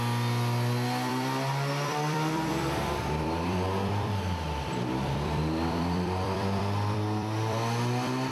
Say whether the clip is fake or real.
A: fake